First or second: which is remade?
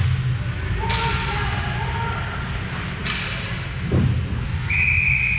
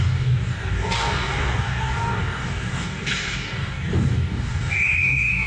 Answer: second